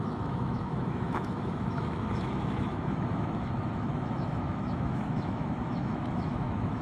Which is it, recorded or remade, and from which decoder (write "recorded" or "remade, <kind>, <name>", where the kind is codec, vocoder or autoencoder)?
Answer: remade, autoencoder, DAC-VAE